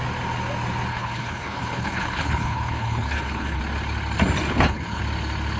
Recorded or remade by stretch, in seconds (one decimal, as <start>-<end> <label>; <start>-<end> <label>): 0.0-0.9 recorded; 0.9-3.6 remade; 3.6-4.5 recorded; 4.5-5.0 remade; 5.0-5.6 recorded